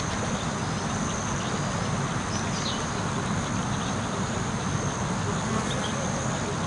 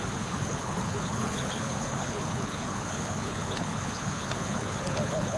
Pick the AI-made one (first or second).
second